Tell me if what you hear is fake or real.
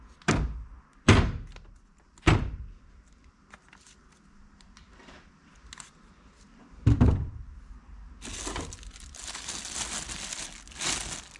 real